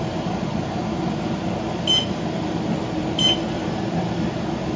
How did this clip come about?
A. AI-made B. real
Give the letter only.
B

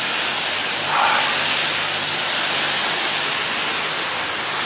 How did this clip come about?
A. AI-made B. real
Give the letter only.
B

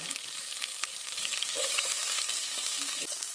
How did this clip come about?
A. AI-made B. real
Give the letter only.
A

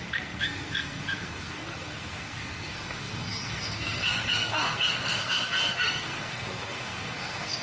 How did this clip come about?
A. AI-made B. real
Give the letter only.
A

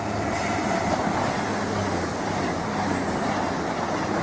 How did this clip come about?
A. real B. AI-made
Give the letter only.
A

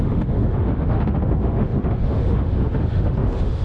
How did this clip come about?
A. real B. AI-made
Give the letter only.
B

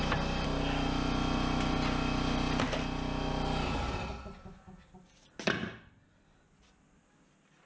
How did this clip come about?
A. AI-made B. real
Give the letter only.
B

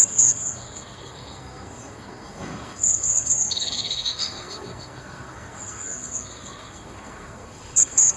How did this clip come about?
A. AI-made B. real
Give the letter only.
A